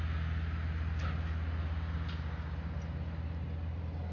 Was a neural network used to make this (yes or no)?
no